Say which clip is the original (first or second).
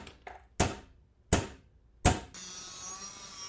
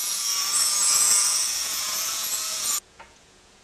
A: first